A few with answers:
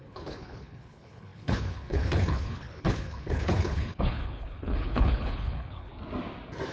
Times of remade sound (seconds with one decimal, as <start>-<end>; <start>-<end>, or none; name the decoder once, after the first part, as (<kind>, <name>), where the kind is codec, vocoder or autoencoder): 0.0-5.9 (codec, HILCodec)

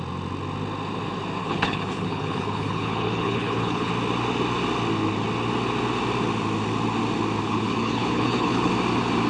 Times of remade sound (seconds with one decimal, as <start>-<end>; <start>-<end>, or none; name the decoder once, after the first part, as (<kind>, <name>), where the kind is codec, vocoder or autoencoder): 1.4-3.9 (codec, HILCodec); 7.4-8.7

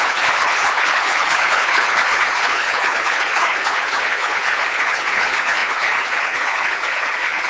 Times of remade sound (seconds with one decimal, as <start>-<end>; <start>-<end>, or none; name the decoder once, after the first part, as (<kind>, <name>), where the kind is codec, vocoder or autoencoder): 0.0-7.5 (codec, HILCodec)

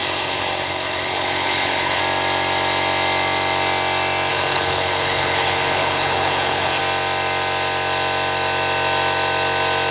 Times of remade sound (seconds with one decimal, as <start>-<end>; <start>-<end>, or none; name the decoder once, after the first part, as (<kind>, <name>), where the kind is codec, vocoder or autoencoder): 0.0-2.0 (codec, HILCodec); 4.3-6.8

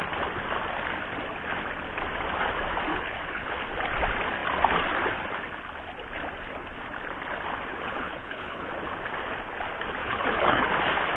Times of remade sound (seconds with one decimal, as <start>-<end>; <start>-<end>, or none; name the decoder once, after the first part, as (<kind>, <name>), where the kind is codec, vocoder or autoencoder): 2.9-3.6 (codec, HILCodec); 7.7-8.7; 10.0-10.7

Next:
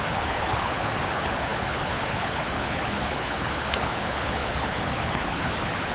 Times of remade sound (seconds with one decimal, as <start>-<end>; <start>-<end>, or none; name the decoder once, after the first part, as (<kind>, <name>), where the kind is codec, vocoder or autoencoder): 0.0-5.9 (codec, HILCodec)

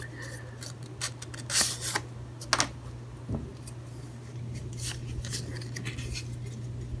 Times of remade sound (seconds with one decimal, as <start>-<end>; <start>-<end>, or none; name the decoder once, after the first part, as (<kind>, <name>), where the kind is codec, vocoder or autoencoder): none